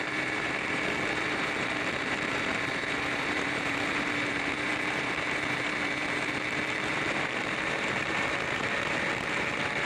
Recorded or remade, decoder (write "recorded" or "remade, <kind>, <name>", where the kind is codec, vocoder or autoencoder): remade, vocoder, BigVGAN v2